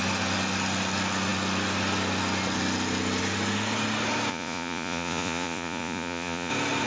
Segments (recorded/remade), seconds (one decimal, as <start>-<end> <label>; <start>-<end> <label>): 0.0-4.3 recorded; 4.3-6.5 remade; 6.5-6.9 recorded